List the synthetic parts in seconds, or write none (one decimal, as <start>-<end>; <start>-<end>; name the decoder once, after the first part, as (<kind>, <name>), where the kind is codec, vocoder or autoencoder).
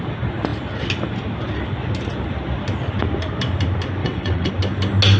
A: 4.0-4.5 (vocoder, WaveNeXt)